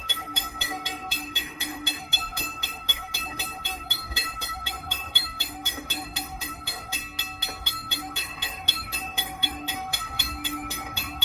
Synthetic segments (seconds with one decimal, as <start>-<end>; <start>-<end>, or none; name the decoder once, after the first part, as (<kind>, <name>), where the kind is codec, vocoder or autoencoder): 0.0-7.0 (autoencoder, DAC-VAE); 7.6-11.2